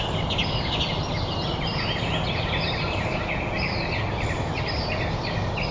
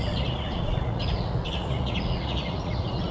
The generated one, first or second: second